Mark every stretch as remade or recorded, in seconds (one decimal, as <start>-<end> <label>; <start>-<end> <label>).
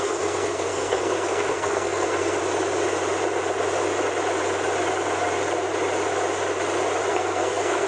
0.0-2.4 remade; 2.4-7.1 recorded; 7.1-7.9 remade